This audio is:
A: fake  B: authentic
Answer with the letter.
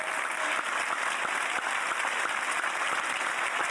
B